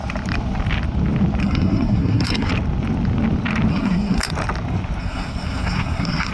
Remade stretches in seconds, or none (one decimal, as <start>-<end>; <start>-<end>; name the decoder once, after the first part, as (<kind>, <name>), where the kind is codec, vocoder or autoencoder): 1.4-2.5 (codec, SNAC); 3.7-4.3; 5.0-6.3